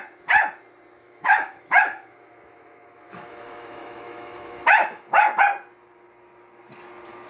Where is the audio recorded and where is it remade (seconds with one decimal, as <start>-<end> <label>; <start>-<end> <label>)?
0.0-1.0 recorded; 1.0-5.4 remade; 5.4-7.3 recorded